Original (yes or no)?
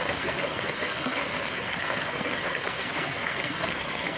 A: no